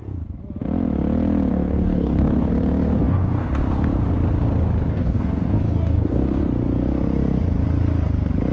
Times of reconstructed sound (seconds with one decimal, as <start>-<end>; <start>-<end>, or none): 1.5-2.5; 3.0-3.5; 4.9-6.4